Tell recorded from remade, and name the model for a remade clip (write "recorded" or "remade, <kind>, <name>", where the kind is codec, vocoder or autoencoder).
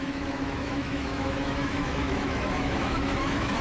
remade, autoencoder, DAC-VAE